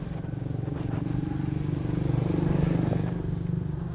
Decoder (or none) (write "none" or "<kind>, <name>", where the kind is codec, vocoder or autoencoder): none